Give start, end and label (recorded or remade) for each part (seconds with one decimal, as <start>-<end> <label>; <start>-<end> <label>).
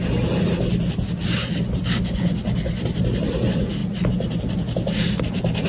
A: 0.0-5.7 recorded